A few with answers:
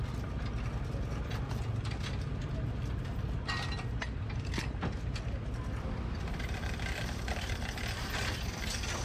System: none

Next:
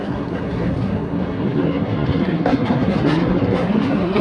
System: codec, SNAC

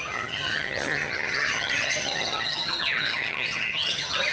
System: vocoder, HiFi-GAN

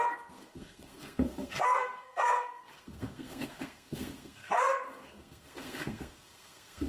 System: codec, SNAC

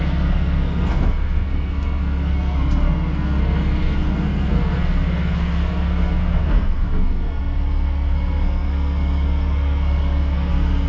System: codec, SNAC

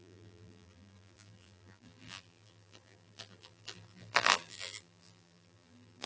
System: vocoder, BigVGAN v2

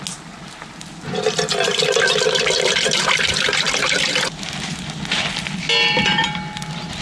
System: none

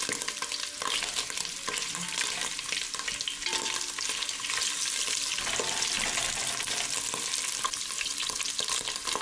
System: none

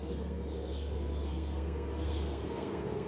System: codec, SNAC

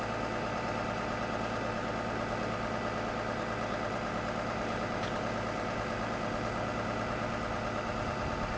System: none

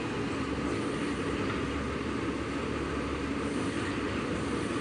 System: none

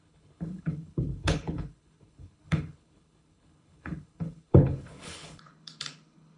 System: codec, HILCodec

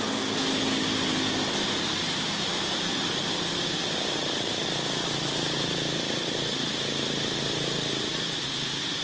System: none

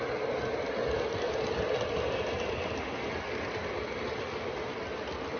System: none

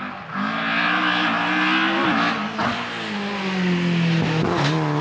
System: none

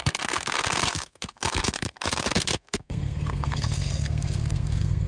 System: codec, SNAC